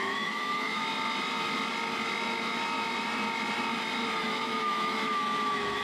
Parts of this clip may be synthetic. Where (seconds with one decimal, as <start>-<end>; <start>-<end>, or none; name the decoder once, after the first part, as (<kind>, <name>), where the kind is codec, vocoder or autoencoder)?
0.0-0.8 (autoencoder, DAC-VAE); 4.3-5.8